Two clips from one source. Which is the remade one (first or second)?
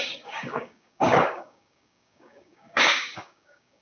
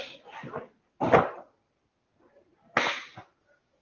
first